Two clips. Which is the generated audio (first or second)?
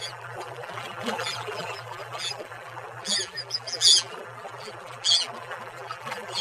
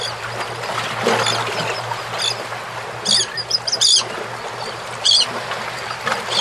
first